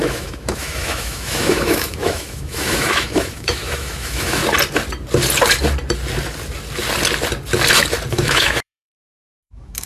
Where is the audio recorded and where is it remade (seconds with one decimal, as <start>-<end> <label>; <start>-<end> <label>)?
0.0-4.4 remade; 4.4-8.1 recorded; 8.1-9.9 remade